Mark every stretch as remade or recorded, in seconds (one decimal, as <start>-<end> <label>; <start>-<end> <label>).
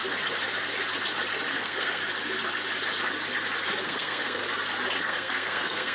0.0-1.5 recorded; 1.5-2.0 remade; 2.0-3.8 recorded; 3.8-4.4 remade; 4.4-5.0 recorded; 5.0-5.9 remade